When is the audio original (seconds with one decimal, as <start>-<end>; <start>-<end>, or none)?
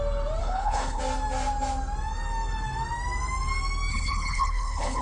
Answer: 0.0-0.4; 1.0-3.9